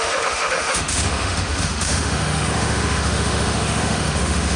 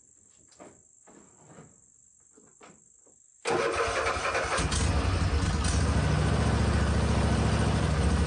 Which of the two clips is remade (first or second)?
first